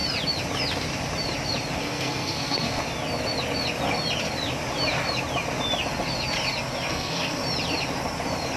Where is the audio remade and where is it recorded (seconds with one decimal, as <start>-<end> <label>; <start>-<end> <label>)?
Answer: 0.0-1.8 recorded; 1.8-2.8 remade; 2.8-6.9 recorded; 6.9-7.4 remade; 7.4-8.6 recorded